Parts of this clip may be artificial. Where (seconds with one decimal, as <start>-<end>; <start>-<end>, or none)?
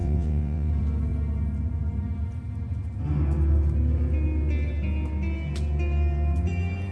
0.0-0.7